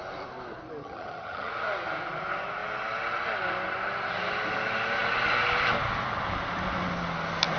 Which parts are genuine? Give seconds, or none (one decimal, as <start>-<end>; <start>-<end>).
0.0-0.8; 1.5-7.6